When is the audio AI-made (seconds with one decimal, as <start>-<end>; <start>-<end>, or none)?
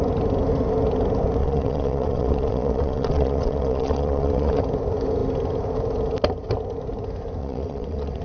1.4-4.6; 7.4-8.2